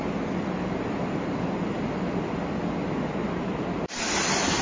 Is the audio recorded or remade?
recorded